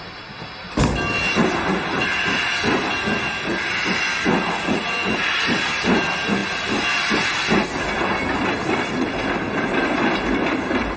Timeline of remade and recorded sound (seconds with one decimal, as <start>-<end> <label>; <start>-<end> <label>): 0.0-11.0 recorded